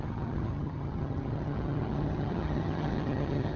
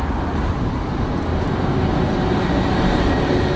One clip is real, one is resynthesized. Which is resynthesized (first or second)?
first